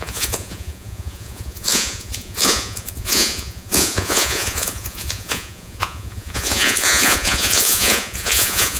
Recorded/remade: remade